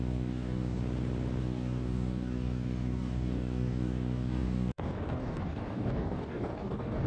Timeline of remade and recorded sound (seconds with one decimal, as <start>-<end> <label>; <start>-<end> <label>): 0.0-0.8 remade; 0.8-1.4 recorded; 1.4-7.1 remade